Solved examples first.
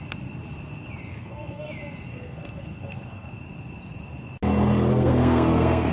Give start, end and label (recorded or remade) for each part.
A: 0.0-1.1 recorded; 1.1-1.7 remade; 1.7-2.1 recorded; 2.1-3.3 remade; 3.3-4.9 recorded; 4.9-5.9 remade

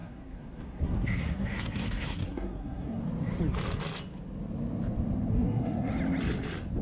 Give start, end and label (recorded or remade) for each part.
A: 0.0-3.0 remade; 3.0-5.3 recorded; 5.3-5.9 remade; 5.9-6.8 recorded

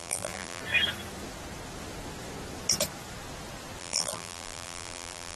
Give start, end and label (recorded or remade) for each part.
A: 0.0-0.6 remade; 0.6-3.8 recorded; 3.8-5.4 remade

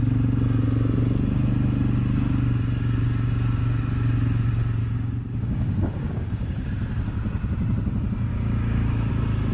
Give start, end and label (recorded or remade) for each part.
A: 0.0-4.8 recorded; 4.8-6.7 remade; 6.7-8.3 recorded; 8.3-9.1 remade; 9.1-9.5 recorded

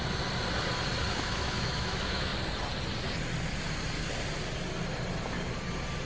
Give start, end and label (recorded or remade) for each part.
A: 0.0-1.1 recorded; 1.1-2.3 remade; 2.3-6.1 recorded